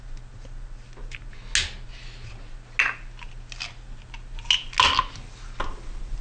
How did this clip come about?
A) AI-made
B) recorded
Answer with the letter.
B